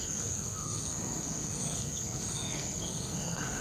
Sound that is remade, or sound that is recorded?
remade